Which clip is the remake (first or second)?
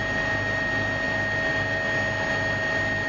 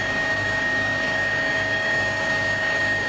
second